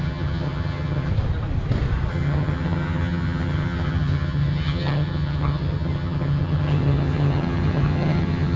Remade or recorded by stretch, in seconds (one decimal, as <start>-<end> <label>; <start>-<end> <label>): 0.0-1.1 remade; 1.1-2.1 recorded; 2.1-8.6 remade